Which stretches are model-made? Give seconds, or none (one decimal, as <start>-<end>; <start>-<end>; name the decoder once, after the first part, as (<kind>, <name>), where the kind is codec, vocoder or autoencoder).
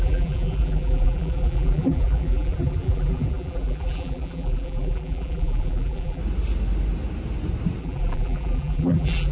0.0-6.2 (vocoder, BigVGAN v2); 7.8-9.3